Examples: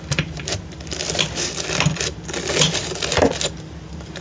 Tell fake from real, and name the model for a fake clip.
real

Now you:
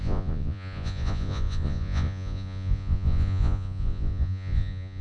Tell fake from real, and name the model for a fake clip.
fake, vocoder, Vocos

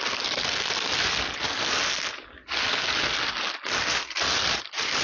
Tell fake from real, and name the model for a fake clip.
real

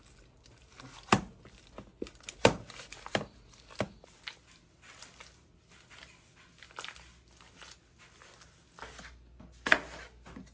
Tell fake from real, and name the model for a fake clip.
real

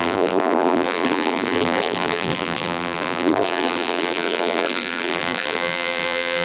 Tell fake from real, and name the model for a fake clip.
fake, vocoder, BigVGAN v2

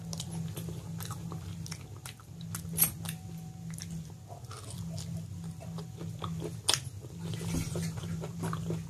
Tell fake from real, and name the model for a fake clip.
real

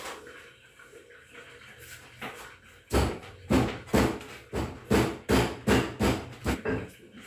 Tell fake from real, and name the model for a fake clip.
real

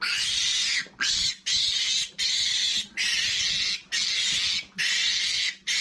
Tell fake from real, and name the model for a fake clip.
real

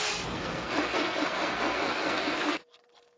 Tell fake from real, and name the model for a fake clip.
fake, codec, SNAC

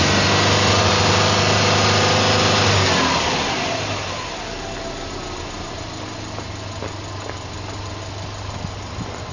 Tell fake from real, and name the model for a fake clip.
real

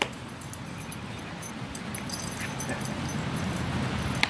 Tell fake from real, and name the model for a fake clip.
real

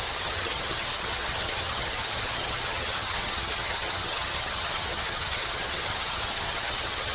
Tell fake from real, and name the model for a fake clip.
fake, vocoder, HiFi-GAN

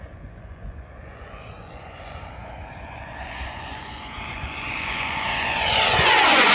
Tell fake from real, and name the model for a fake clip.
fake, vocoder, Vocos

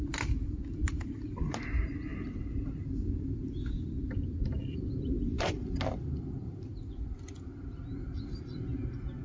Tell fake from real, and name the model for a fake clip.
real